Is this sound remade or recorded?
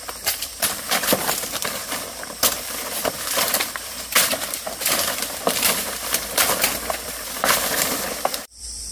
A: remade